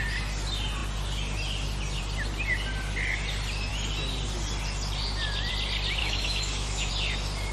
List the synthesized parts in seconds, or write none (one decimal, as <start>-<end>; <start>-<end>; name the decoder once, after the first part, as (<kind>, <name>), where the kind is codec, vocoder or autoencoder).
6.0-6.9 (autoencoder, DAC-VAE)